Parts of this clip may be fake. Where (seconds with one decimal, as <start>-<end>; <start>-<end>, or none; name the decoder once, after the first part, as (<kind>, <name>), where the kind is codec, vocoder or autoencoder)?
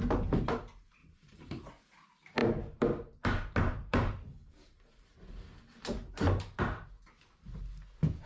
1.0-1.7 (vocoder, BigVGAN v2); 2.4-6.6